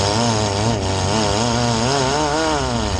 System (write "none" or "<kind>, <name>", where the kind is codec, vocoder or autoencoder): none